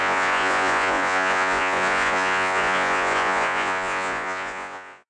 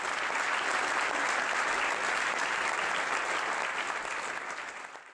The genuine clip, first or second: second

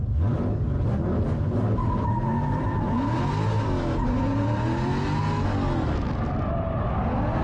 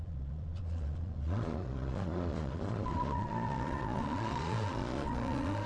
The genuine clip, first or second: first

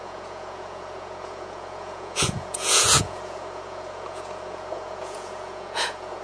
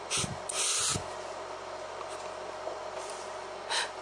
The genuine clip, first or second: second